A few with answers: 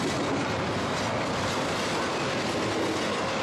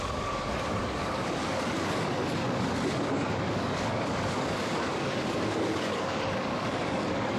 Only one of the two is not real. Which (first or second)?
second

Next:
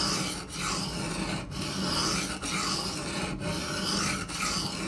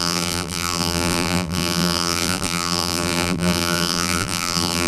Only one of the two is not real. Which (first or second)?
second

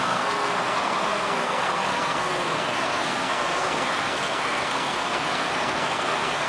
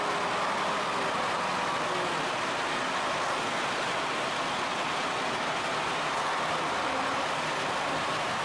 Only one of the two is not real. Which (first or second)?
first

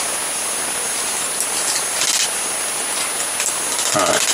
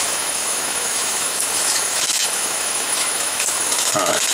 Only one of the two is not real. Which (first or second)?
second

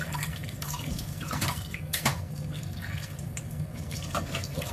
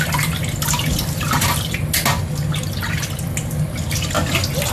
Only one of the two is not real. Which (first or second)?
first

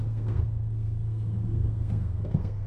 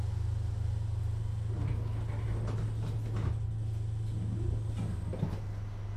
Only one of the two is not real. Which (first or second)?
first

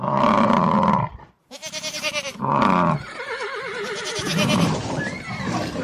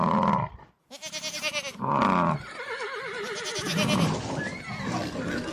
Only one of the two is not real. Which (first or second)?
first